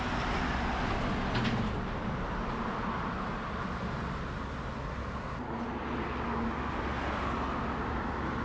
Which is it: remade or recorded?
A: recorded